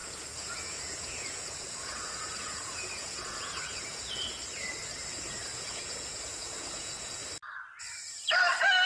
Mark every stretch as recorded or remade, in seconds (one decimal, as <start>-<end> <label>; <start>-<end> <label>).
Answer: 0.0-4.4 remade; 4.4-5.3 recorded; 5.3-7.2 remade; 7.2-8.9 recorded